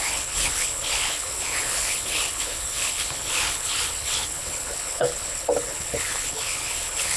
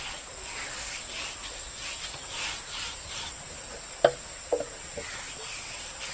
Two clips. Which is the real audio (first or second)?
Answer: second